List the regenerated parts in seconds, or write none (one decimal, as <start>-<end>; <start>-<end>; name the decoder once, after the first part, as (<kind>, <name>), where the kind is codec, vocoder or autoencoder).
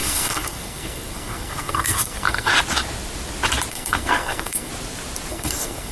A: 0.0-2.5 (codec, SNAC); 3.7-4.7; 5.3-5.9